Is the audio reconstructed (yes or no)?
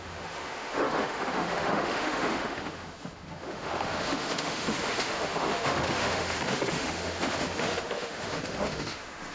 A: yes